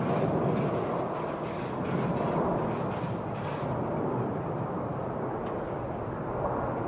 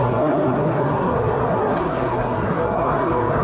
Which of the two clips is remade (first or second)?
second